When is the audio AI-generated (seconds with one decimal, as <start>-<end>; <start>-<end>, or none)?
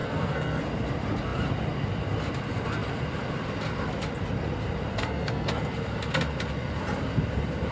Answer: 0.0-0.6; 4.9-5.5